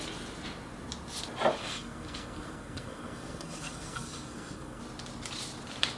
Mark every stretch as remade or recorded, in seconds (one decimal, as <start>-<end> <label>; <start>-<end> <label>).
0.0-1.6 recorded; 1.6-4.8 remade; 4.8-6.0 recorded